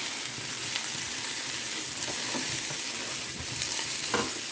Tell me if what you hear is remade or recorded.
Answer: recorded